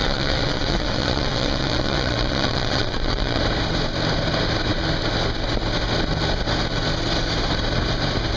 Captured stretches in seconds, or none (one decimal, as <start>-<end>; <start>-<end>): 3.4-8.4